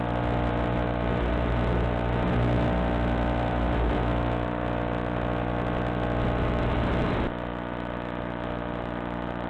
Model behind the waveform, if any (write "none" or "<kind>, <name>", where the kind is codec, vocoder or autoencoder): none